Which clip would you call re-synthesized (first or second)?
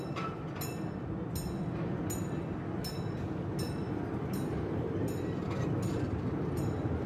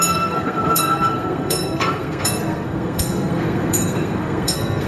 second